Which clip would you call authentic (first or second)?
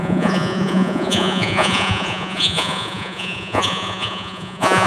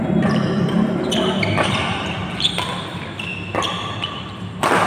second